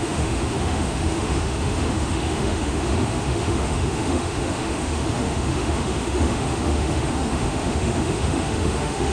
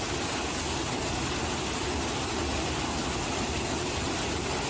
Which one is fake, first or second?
first